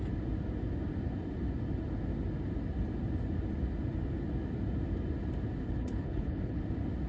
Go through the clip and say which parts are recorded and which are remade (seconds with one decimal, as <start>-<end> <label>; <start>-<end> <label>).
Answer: 0.0-5.6 recorded; 5.6-6.6 remade; 6.6-7.1 recorded